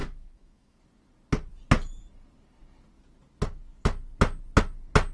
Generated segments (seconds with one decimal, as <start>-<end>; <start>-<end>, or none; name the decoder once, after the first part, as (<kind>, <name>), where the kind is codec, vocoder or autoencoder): 0.0-0.8 (autoencoder, DAC-VAE)